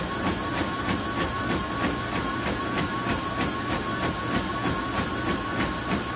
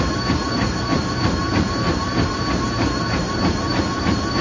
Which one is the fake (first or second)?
second